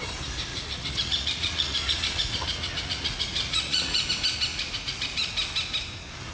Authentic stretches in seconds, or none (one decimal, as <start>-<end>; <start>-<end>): 0.0-0.5; 4.1-4.5; 5.3-6.3